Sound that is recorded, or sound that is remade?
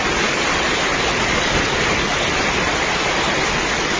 remade